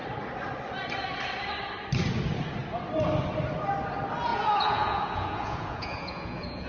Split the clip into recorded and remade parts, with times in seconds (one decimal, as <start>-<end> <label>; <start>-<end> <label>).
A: 0.0-4.3 recorded; 4.3-6.7 remade